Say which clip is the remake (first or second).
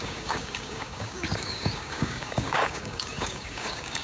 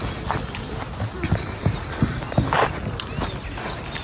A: first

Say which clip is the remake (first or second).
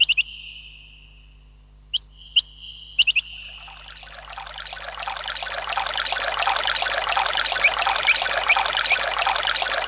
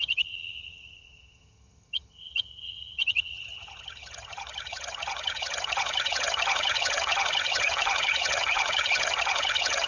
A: second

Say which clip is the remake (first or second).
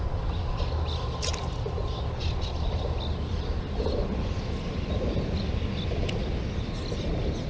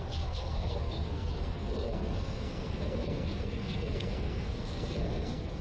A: second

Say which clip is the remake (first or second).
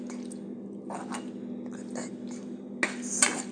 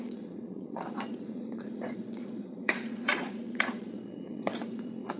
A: second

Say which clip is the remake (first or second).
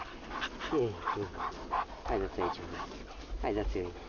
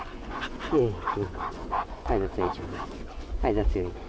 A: second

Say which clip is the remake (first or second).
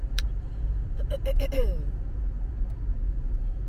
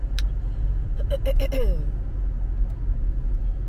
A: first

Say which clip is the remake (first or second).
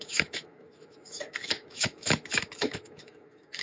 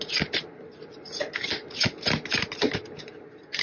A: first